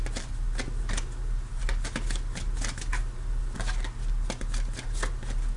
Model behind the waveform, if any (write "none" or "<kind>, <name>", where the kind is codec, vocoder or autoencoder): none